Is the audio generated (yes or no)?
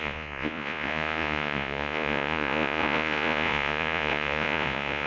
yes